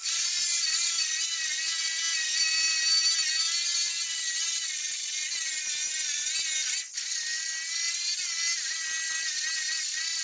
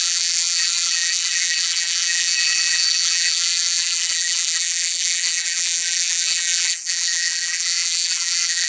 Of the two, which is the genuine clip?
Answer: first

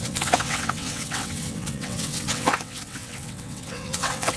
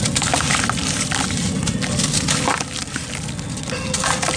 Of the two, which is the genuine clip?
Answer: second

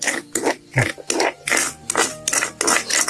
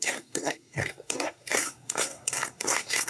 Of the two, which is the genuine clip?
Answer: first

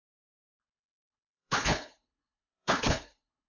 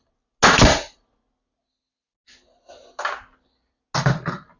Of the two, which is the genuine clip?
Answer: second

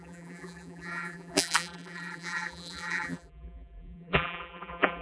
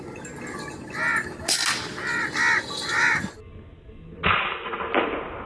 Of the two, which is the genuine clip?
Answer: second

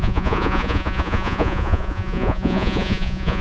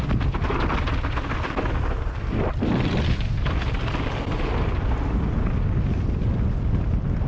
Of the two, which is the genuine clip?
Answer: second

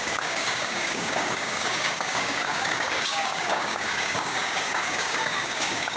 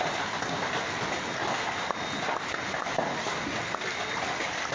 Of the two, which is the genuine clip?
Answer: second